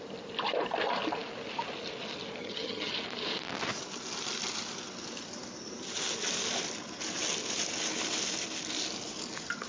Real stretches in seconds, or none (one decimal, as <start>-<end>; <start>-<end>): 0.0-2.4; 2.9-9.7